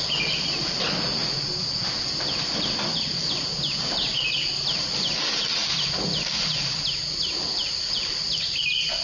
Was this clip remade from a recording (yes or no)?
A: no